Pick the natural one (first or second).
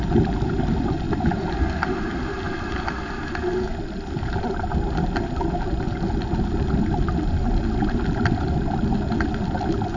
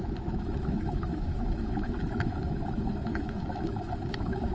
first